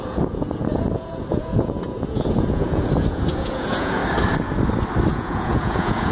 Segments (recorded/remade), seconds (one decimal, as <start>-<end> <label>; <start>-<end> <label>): 0.0-4.0 remade; 4.0-5.1 recorded; 5.1-6.1 remade